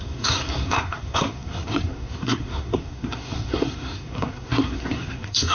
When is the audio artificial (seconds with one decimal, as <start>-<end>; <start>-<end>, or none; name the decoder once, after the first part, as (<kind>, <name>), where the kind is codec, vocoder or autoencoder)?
0.0-5.5 (codec, SNAC)